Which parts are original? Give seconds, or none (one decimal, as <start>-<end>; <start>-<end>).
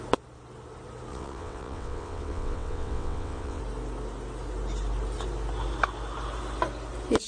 0.0-1.1; 3.6-7.3